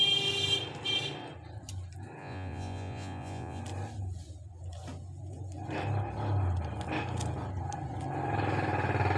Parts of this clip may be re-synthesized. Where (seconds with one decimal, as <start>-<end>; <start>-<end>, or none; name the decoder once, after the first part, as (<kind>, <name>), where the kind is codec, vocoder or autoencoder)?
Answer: 2.2-3.6 (vocoder, Vocos)